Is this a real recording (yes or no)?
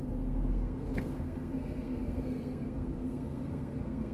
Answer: no